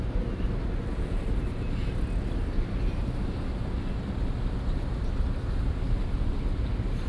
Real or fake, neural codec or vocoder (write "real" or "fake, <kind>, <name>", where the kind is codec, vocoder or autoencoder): real